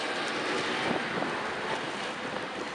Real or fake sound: real